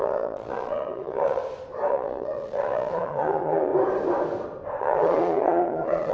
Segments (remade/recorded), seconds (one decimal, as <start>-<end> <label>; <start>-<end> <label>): 0.0-1.4 remade; 1.4-1.9 recorded; 1.9-3.7 remade; 3.7-4.8 recorded; 4.8-6.1 remade

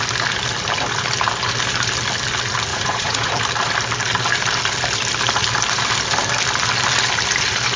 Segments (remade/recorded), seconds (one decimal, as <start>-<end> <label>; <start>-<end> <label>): 0.0-2.7 recorded; 2.7-3.3 remade; 3.3-7.8 recorded

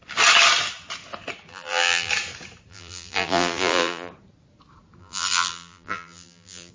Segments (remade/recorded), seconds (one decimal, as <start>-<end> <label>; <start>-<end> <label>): 0.0-1.5 recorded; 1.5-2.1 remade; 2.1-2.7 recorded; 2.7-4.1 remade; 4.1-5.0 recorded; 5.0-6.7 remade

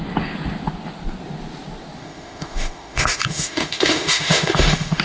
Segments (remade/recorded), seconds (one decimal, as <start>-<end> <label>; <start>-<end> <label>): 0.0-2.0 recorded; 2.0-5.0 remade

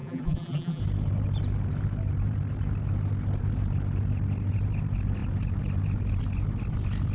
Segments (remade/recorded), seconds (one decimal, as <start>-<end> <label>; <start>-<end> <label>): 0.0-0.8 remade; 0.8-7.1 recorded

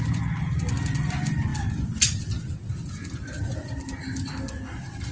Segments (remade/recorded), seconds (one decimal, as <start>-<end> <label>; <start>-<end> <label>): 0.0-5.1 recorded

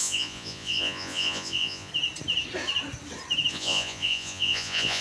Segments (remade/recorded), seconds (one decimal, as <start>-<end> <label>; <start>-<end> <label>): 0.0-1.9 remade; 1.9-3.5 recorded; 3.5-5.0 remade

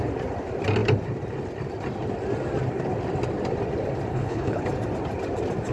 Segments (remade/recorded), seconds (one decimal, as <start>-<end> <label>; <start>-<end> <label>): 0.0-4.1 recorded; 4.1-4.6 remade; 4.6-5.7 recorded